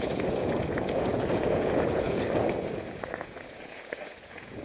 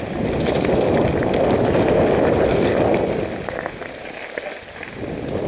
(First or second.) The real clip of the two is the second